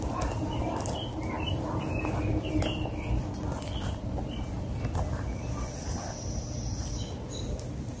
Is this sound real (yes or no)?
yes